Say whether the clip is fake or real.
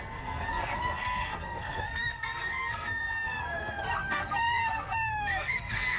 fake